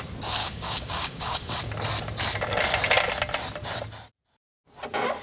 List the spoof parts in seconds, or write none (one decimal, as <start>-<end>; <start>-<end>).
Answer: 0.4-1.6